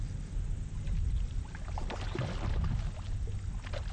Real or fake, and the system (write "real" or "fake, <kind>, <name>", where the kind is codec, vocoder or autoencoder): real